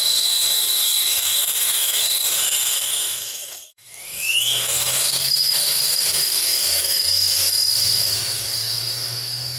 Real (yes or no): no